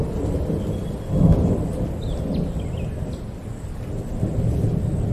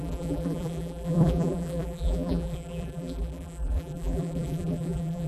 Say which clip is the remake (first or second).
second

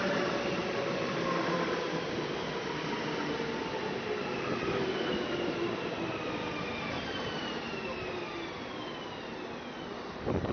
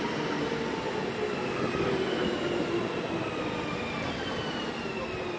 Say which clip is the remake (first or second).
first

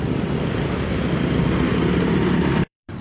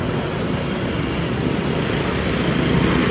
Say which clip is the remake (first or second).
first